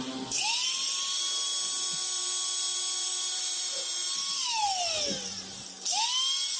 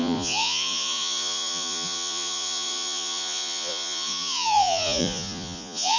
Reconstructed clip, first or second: second